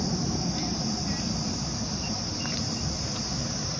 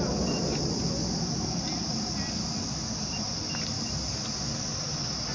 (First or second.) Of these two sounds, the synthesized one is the first